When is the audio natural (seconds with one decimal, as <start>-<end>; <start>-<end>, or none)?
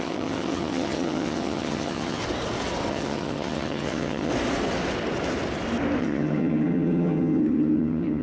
2.2-2.9; 4.3-6.0